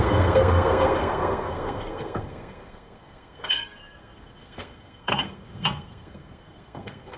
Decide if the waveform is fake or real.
fake